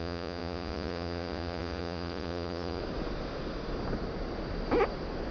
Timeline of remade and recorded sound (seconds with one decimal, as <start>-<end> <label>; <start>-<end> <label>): 0.0-2.8 remade; 2.8-5.3 recorded